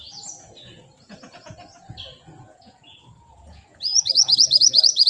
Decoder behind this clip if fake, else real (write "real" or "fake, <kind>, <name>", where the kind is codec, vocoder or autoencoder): fake, vocoder, Vocos